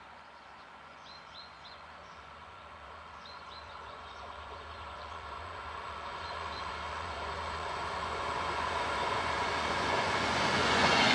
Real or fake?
fake